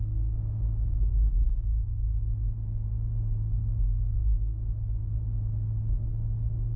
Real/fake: real